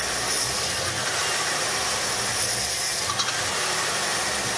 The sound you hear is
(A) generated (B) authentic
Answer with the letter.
B